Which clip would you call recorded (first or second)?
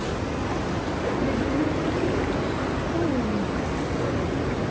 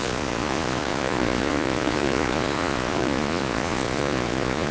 first